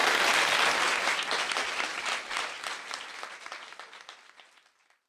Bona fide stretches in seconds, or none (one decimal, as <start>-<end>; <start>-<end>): 0.0-5.1